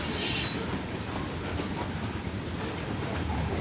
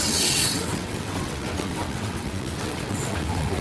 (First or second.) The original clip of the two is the first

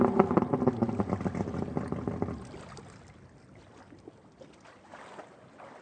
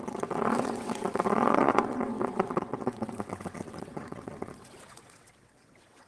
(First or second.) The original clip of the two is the first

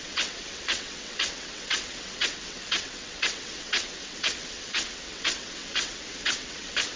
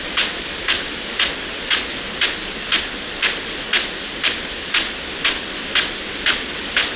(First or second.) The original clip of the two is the second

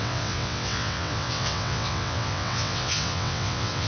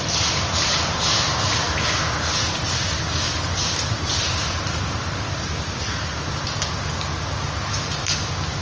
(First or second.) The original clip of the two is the second